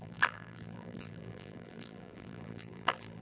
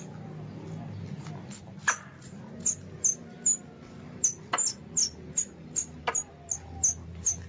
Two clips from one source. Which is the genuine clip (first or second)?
second